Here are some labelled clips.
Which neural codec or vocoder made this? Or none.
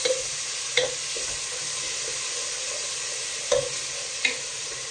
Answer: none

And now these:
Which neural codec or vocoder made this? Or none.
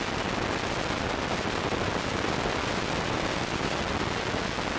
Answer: none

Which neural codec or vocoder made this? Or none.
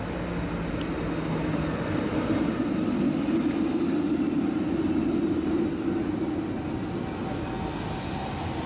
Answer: none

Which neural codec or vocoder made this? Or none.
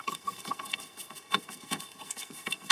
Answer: codec, SNAC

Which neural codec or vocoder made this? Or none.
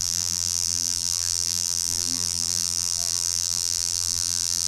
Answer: vocoder, BigVGAN v2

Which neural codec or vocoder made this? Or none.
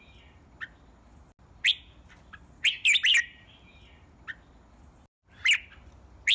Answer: none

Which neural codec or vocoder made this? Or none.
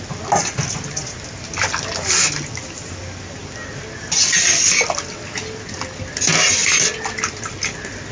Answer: none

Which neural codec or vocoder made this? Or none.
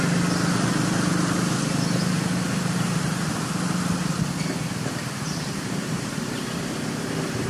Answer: vocoder, BigVGAN v2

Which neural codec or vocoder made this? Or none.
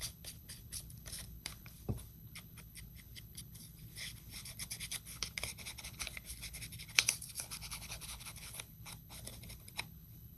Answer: codec, HILCodec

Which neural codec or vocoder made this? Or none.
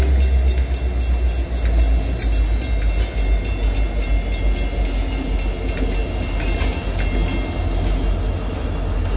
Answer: none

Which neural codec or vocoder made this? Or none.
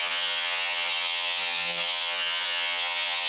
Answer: vocoder, HiFi-GAN